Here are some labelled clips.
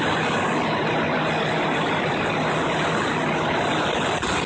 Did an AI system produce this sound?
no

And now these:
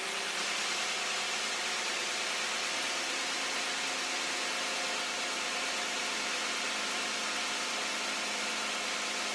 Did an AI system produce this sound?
no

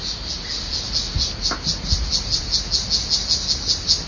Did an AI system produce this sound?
no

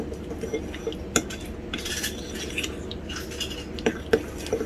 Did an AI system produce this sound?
no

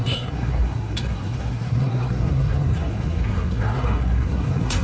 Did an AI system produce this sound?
yes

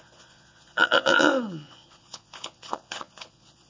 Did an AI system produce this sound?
yes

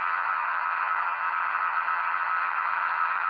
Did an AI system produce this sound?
yes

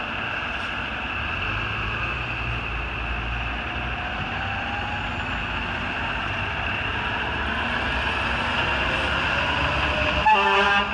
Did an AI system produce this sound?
no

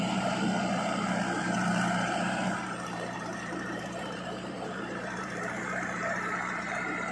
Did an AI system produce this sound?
yes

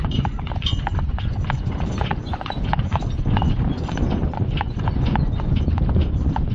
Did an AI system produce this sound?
yes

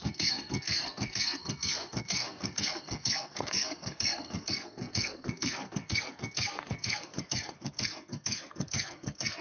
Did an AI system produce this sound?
yes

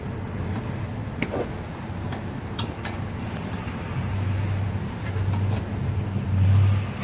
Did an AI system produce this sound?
yes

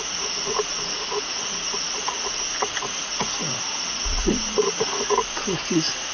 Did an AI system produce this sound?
yes